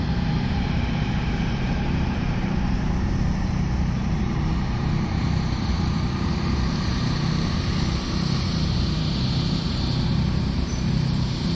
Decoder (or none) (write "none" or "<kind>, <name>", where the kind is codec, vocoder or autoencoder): vocoder, BigVGAN v2